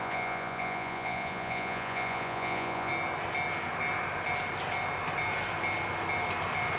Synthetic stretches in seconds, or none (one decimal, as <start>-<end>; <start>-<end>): 0.0-2.9